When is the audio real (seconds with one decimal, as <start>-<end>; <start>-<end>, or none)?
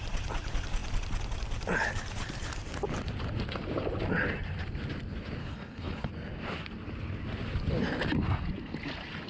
0.0-5.4; 6.1-9.3